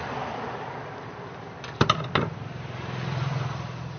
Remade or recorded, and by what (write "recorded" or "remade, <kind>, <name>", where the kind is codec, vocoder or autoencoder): remade, vocoder, BigVGAN v2